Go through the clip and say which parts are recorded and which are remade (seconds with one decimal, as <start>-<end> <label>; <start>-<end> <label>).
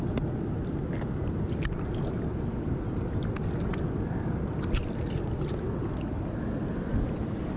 0.0-7.6 recorded